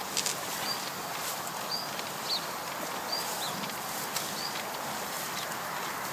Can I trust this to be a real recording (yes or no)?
yes